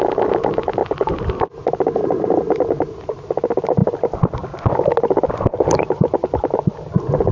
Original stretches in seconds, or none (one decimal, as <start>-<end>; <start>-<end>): 0.0-7.3